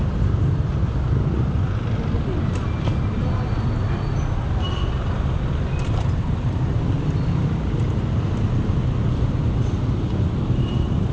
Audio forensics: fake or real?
real